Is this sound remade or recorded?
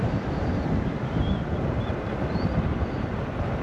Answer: recorded